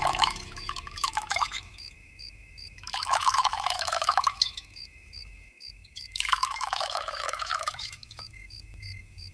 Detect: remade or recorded remade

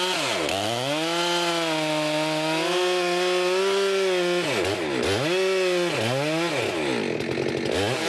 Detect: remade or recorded recorded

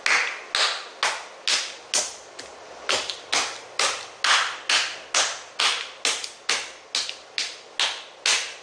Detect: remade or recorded recorded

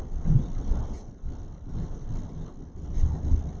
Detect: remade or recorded recorded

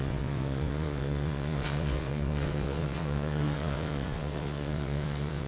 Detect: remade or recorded remade